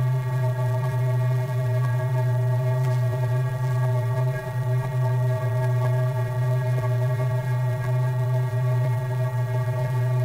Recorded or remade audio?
remade